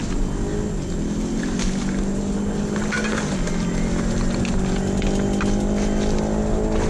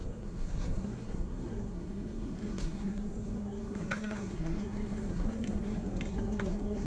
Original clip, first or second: first